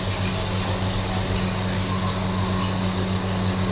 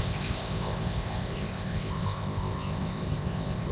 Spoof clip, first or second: second